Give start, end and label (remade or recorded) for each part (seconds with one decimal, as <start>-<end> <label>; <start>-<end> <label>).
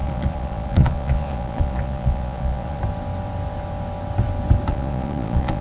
0.0-2.8 remade; 2.8-4.7 recorded; 4.7-5.6 remade